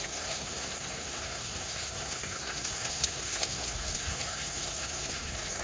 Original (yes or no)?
no